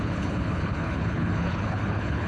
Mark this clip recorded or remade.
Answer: remade